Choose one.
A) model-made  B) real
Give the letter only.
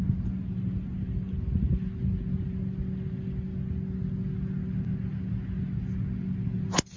B